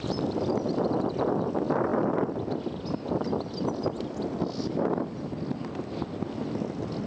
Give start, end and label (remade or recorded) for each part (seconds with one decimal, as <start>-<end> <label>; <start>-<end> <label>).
0.0-7.1 recorded